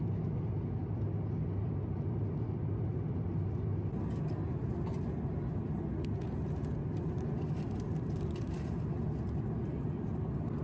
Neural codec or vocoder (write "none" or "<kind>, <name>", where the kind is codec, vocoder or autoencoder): none